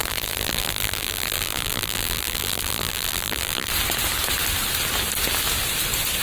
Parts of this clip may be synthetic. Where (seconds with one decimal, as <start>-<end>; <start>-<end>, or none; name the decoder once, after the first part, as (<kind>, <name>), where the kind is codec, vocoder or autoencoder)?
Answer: 0.0-3.7 (vocoder, BigVGAN v2)